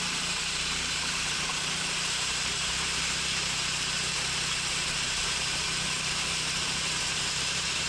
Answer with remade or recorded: remade